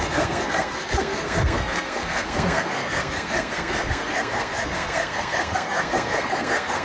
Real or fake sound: fake